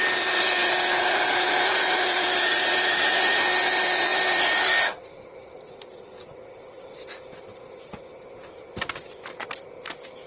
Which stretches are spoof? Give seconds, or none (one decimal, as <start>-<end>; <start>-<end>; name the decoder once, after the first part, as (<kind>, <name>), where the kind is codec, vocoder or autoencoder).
none

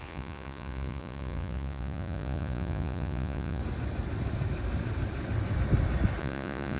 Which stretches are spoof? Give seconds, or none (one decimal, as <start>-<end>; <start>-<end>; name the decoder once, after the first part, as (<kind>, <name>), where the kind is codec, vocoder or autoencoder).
0.0-3.6 (vocoder, Vocos); 6.2-6.8